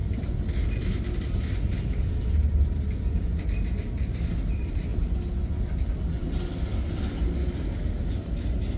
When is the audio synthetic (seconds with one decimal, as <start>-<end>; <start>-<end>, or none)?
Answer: none